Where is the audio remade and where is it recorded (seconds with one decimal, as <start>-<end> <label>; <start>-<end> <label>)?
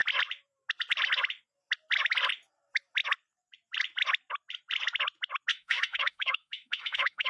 0.0-5.5 recorded; 5.5-7.3 remade